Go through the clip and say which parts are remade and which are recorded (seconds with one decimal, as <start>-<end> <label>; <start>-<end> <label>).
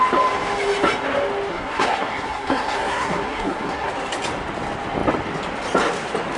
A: 0.0-1.5 recorded; 1.5-3.9 remade; 3.9-6.4 recorded